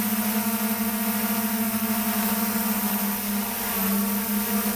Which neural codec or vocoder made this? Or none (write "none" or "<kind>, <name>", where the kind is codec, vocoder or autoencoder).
none